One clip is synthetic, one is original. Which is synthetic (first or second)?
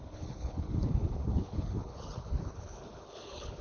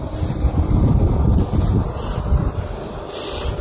first